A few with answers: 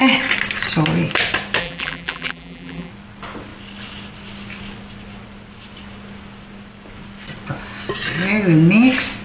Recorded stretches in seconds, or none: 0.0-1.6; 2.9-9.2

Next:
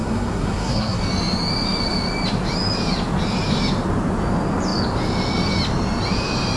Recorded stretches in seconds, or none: 1.0-6.6

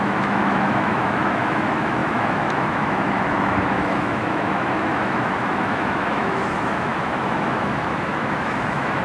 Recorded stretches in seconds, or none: none

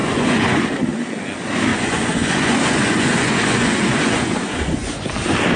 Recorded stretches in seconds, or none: 0.6-1.7; 5.1-5.6

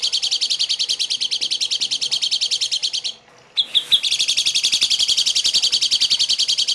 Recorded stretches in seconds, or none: 0.0-6.7